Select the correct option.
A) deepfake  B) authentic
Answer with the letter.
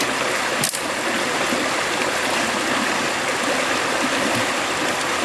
B